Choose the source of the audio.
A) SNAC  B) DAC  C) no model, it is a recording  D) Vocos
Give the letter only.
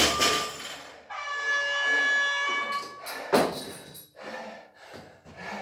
C